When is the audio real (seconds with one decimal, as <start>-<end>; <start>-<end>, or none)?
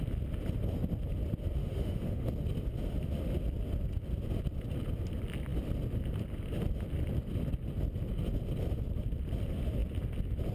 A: 0.0-1.6; 2.3-10.5